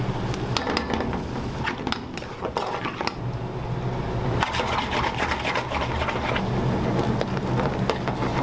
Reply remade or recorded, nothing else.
recorded